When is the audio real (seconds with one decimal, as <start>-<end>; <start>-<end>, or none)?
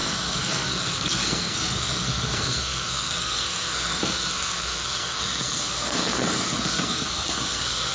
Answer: none